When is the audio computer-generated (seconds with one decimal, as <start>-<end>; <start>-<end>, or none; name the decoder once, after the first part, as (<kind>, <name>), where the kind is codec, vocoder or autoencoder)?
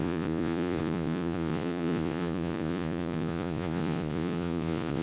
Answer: 0.0-5.0 (vocoder, Vocos)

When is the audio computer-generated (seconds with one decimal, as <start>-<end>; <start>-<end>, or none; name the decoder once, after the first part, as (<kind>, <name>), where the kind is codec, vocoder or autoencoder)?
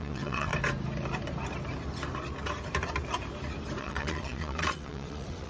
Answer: 0.0-0.5 (vocoder, WaveNeXt); 3.8-5.5